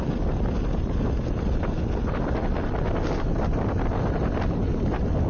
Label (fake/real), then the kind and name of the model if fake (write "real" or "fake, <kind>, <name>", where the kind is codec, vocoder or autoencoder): real